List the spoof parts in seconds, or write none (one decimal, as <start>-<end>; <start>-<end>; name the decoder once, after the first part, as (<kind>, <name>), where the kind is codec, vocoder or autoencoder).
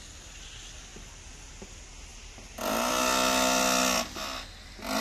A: none